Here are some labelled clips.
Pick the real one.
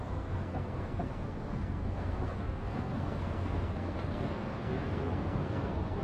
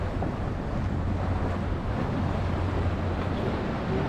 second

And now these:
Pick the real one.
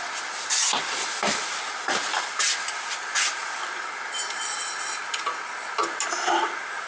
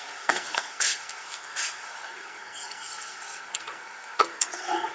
first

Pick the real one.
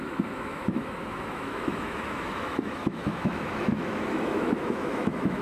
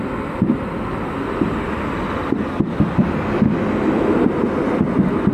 second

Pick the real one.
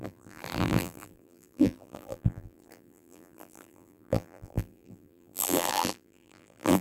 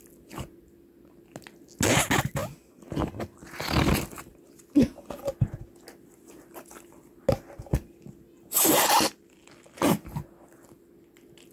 second